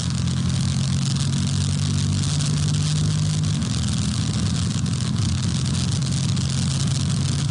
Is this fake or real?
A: real